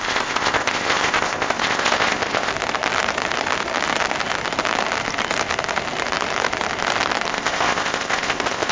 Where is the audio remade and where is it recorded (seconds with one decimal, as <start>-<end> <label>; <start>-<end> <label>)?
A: 0.0-2.5 remade; 2.5-7.3 recorded; 7.3-8.7 remade